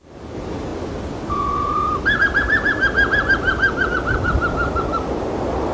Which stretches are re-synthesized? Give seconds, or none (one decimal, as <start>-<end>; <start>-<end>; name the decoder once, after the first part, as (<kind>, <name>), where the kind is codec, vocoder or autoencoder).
0.0-0.7 (vocoder, BigVGAN v2); 3.9-5.7